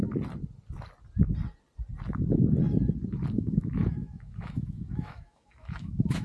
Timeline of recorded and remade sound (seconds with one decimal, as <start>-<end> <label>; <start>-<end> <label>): 0.0-3.3 recorded; 3.3-6.2 remade